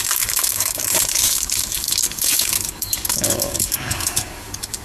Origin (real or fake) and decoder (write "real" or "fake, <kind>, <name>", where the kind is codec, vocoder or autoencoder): fake, codec, DAC